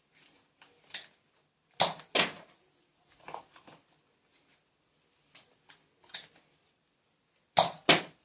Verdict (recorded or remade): recorded